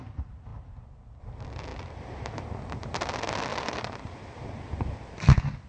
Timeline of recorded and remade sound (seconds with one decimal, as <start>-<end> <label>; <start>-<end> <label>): 0.0-1.7 recorded; 1.7-2.5 remade; 2.5-3.5 recorded; 3.5-4.6 remade; 4.6-5.7 recorded